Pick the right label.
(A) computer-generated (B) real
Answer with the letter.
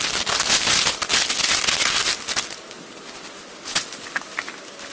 B